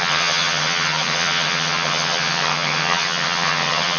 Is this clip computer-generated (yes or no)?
yes